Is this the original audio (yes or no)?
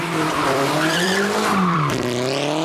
no